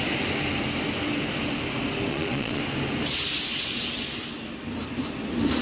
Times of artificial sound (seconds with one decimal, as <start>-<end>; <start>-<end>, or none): 2.1-2.6